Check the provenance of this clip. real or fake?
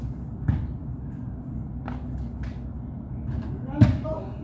real